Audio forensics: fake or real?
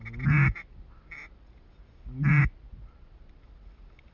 real